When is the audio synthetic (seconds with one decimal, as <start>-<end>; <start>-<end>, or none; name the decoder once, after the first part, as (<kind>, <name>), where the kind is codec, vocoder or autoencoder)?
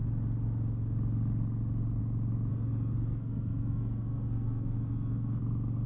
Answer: 2.5-5.4 (codec, SNAC)